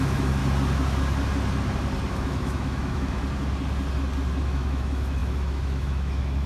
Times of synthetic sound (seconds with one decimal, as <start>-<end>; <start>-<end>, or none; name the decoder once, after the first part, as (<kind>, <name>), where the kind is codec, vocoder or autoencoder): 0.0-0.4 (autoencoder, DAC-VAE); 2.1-3.2; 4.4-6.5